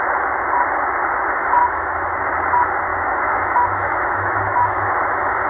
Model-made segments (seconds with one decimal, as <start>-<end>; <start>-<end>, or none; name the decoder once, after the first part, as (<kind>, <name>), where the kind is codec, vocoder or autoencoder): 1.6-2.2 (autoencoder, DAC-VAE); 2.9-4.9

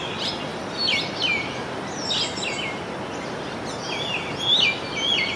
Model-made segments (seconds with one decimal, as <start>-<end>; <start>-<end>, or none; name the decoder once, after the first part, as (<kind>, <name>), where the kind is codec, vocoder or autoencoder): none